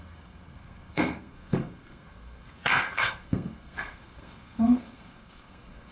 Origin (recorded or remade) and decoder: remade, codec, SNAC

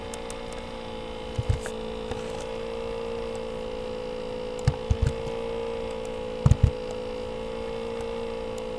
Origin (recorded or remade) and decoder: recorded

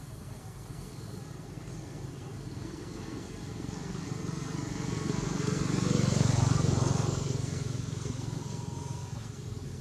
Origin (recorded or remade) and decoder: remade, codec, SNAC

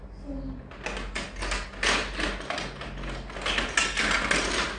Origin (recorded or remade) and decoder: recorded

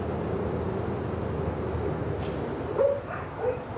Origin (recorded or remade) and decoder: recorded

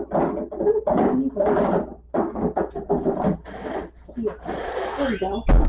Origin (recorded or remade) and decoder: recorded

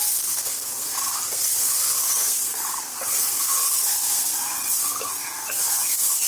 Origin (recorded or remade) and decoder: remade, codec, SNAC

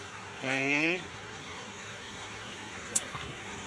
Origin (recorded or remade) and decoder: remade, codec, SNAC